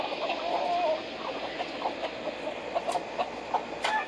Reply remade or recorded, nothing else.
recorded